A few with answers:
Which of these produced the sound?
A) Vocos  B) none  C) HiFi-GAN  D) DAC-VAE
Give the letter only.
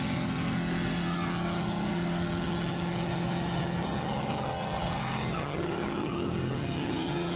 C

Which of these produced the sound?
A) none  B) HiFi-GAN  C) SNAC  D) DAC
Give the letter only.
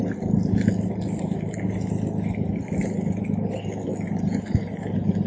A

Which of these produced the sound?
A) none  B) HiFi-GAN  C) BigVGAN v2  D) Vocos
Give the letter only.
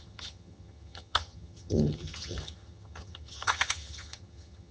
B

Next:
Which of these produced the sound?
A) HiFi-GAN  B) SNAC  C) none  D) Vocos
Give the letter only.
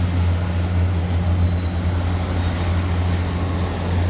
C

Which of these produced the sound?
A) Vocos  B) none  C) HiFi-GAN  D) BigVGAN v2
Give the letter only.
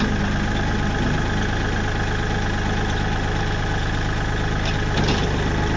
B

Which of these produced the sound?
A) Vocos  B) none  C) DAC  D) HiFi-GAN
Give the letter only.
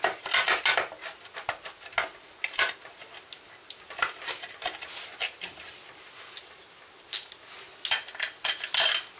B